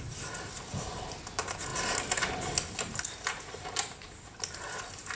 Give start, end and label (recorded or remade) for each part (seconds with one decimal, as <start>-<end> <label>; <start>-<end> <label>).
0.0-5.1 recorded